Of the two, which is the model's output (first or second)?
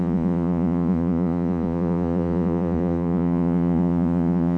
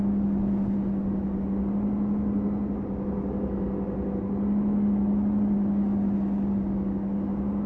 first